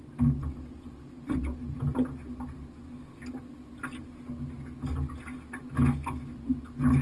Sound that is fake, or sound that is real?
real